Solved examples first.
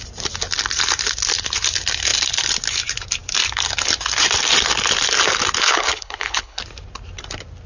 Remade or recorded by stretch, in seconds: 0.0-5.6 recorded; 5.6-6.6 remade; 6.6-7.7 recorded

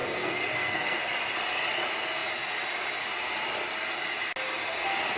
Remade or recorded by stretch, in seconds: 0.0-1.0 remade; 1.0-5.2 recorded